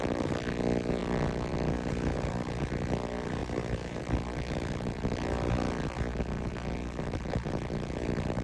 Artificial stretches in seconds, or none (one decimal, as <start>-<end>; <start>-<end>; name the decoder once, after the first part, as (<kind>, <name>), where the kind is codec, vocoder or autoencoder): 3.4-4.0 (vocoder, BigVGAN v2)